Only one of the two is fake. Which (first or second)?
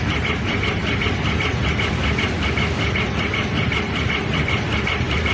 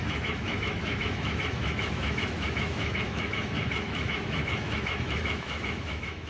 second